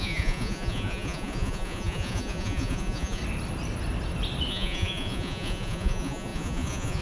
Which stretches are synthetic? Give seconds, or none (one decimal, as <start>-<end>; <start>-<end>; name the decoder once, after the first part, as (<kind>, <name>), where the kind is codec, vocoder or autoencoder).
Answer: 0.0-3.2 (vocoder, Vocos); 4.5-7.0